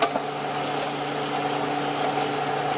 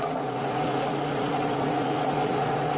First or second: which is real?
first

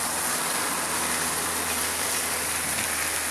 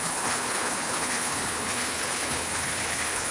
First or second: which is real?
first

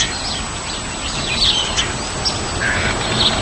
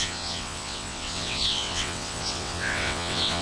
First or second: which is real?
first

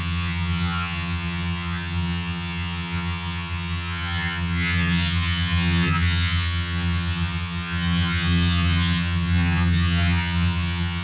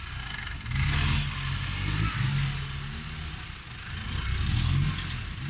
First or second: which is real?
second